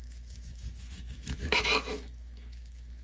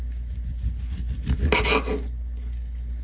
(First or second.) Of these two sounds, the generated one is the first